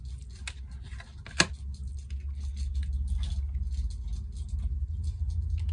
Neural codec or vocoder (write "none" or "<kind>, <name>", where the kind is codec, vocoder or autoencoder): none